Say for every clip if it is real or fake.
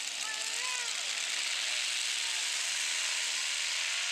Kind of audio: real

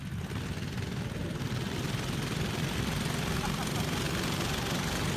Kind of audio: real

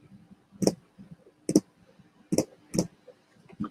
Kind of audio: real